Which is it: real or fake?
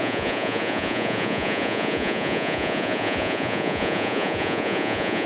fake